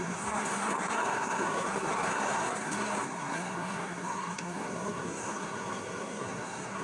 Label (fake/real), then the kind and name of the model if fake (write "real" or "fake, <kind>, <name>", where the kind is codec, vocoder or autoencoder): fake, codec, SNAC